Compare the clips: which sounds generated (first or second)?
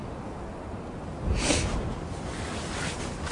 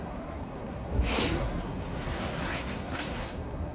second